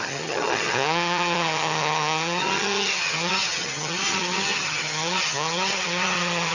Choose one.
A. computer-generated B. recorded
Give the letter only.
A